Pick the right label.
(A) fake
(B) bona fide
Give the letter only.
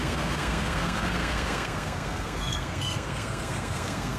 A